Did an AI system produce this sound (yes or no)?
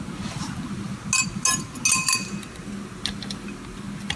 no